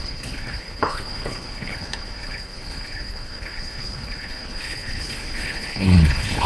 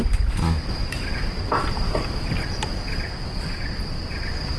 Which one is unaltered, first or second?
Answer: second